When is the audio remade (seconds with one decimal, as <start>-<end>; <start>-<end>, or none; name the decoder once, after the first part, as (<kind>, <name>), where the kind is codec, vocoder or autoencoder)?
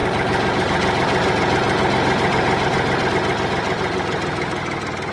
none